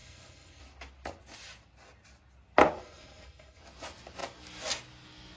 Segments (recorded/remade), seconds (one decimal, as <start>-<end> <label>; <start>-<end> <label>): 0.0-0.6 remade; 0.6-2.8 recorded; 2.8-3.6 remade; 3.6-5.4 recorded